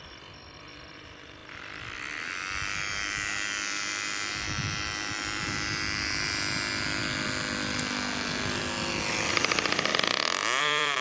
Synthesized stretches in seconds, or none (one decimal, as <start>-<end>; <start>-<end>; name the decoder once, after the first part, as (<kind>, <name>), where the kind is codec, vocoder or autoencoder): 0.0-7.0 (vocoder, BigVGAN v2); 9.3-11.0